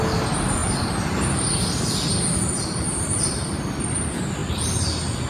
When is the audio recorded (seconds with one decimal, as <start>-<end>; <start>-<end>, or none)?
0.0-0.6; 3.8-5.3